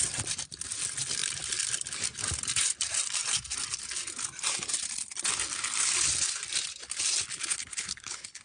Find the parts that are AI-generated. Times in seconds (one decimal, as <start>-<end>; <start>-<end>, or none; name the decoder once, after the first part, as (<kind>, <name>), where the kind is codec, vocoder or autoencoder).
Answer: 7.3-8.4 (codec, HILCodec)